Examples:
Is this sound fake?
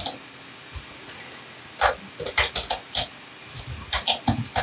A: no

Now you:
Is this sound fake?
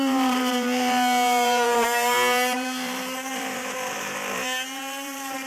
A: yes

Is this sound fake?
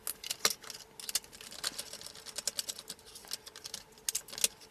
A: no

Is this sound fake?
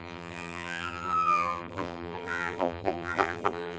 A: yes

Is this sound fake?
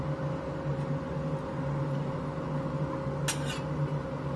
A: no